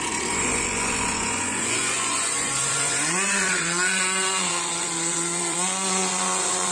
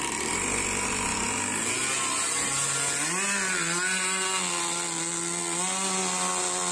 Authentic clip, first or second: second